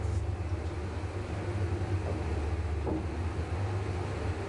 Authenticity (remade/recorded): recorded